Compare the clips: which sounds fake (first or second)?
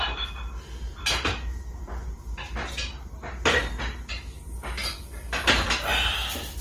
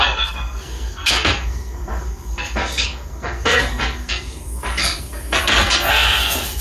second